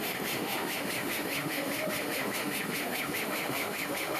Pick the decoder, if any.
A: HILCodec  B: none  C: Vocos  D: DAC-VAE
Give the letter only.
D